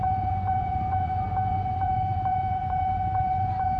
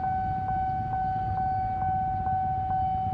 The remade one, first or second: first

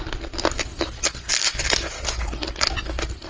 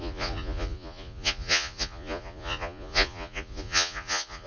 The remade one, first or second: second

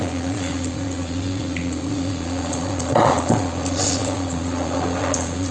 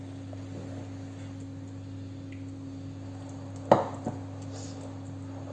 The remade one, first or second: first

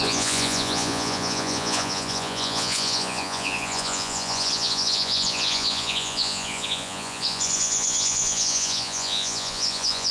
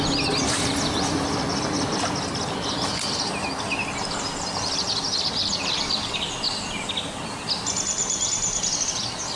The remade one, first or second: first